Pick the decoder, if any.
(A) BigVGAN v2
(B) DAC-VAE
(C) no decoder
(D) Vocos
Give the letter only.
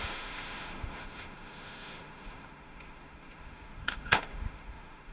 B